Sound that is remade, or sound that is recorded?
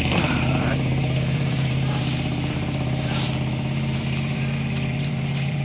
remade